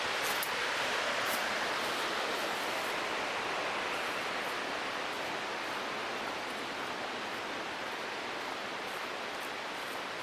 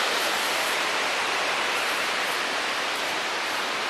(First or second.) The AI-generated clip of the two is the second